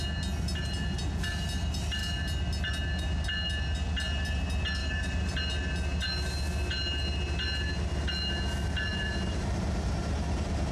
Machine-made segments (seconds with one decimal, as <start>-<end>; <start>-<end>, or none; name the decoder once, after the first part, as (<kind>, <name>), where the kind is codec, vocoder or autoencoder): 4.8-5.4 (vocoder, BigVGAN v2); 8.9-10.7